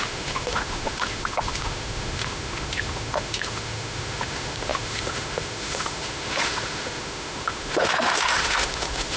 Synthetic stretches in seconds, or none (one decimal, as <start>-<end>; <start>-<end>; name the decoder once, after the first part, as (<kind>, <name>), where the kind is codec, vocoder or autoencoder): 0.0-9.2 (autoencoder, DAC-VAE)